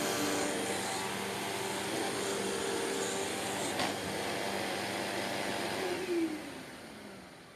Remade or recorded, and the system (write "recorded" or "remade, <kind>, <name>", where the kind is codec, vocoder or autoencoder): recorded